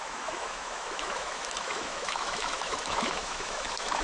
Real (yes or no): no